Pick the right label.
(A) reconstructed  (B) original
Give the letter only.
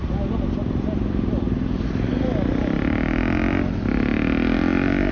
B